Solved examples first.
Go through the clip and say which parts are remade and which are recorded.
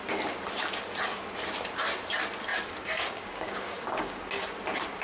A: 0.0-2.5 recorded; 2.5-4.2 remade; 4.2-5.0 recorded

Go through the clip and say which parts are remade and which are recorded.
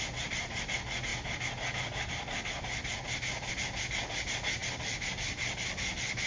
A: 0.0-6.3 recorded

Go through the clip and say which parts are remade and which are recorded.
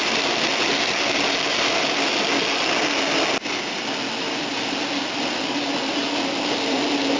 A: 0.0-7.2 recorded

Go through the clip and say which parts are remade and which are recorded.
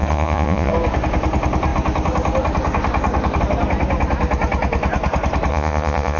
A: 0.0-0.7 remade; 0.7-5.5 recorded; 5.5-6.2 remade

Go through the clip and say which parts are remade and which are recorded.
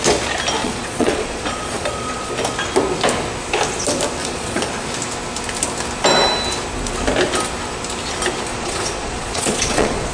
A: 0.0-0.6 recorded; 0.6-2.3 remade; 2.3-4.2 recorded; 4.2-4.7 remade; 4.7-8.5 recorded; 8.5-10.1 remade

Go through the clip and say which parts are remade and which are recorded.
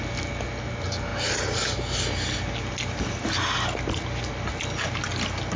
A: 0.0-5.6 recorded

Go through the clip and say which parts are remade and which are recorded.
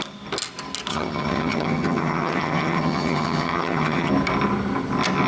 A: 0.0-0.9 recorded; 0.9-4.1 remade; 4.1-5.3 recorded